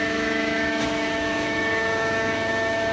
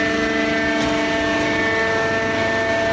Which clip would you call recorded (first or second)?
second